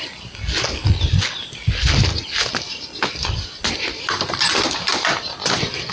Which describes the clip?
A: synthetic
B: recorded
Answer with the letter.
B